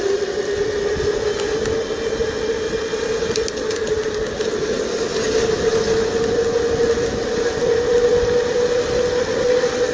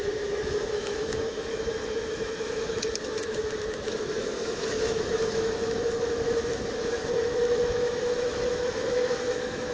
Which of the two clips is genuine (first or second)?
first